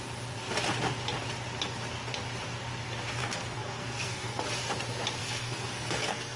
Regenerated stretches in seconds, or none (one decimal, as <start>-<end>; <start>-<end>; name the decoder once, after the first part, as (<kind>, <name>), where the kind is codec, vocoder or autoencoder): 3.2-4.4 (codec, SNAC); 5.2-6.4